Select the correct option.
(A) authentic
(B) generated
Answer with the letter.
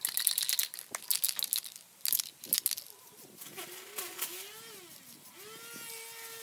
A